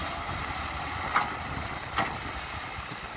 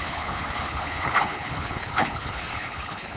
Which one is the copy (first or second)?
second